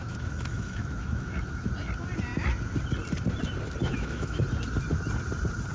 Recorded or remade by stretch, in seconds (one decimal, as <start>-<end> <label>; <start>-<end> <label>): 0.0-1.7 remade; 1.7-3.8 recorded; 3.8-4.4 remade; 4.4-5.7 recorded